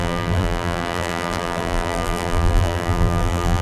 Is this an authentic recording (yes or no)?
no